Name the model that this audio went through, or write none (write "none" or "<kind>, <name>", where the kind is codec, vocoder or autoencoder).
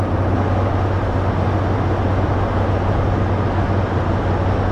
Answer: none